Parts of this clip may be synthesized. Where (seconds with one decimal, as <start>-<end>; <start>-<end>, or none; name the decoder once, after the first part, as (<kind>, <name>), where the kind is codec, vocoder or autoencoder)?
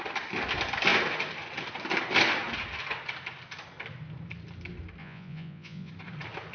5.0-5.9 (vocoder, Vocos)